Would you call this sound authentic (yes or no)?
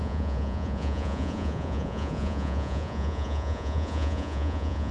no